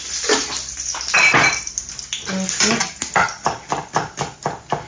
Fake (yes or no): no